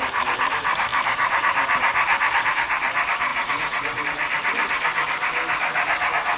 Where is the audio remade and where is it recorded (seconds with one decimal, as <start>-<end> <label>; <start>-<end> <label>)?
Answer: 0.0-3.3 recorded; 3.3-4.0 remade; 4.0-6.4 recorded